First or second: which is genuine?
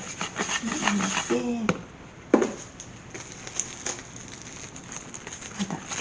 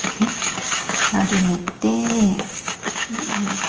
first